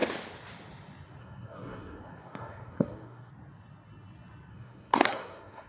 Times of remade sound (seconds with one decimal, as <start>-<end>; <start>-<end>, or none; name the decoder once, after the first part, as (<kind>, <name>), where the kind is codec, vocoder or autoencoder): 1.2-3.3 (codec, SNAC); 4.5-5.7